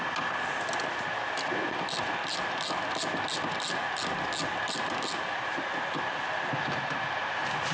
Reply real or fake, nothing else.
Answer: real